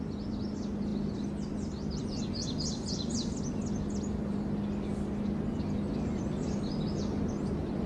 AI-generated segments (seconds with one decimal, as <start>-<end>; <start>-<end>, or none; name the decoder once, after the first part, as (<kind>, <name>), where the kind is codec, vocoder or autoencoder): none

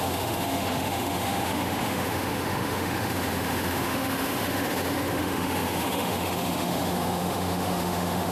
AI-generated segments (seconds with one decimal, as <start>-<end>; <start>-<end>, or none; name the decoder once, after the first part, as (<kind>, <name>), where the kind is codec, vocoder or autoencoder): 0.0-8.3 (autoencoder, DAC-VAE)

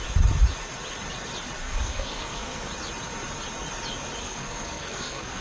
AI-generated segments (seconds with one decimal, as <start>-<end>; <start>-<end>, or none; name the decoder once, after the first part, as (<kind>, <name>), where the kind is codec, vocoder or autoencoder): 1.6-2.7 (codec, SNAC); 4.2-5.4

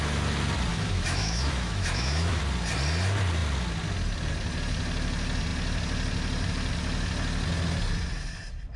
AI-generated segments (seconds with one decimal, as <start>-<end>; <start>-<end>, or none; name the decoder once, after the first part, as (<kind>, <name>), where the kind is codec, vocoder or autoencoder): 0.7-2.4 (autoencoder, DAC-VAE)

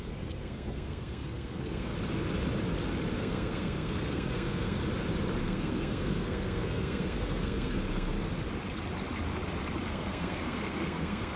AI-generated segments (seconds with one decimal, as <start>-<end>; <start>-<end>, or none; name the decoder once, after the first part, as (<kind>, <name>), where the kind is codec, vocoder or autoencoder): 0.0-1.9 (codec, SNAC); 3.1-4.8; 5.4-8.3; 9.9-11.4